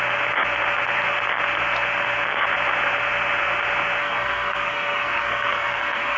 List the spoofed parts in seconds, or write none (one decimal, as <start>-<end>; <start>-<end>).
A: 4.0-6.2